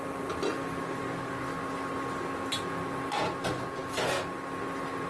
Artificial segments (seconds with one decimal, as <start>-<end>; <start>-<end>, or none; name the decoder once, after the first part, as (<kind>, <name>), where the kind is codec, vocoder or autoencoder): none